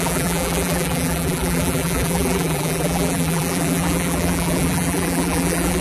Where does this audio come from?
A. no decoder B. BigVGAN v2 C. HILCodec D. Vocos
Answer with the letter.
B